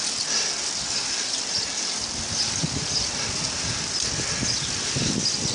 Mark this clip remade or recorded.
recorded